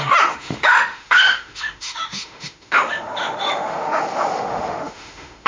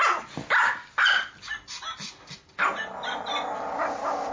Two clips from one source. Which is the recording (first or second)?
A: second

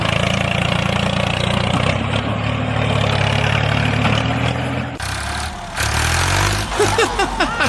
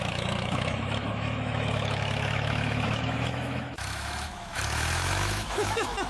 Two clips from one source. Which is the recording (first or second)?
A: first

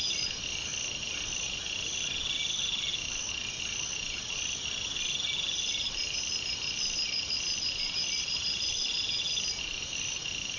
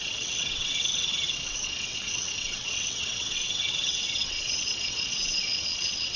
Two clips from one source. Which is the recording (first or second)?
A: first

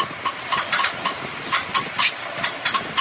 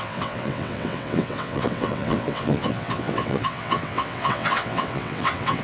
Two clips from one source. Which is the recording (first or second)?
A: first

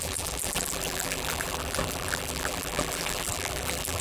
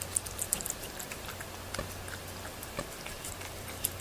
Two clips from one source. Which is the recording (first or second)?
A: second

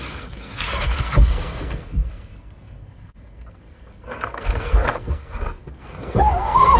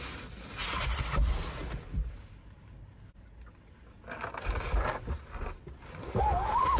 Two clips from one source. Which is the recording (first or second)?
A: second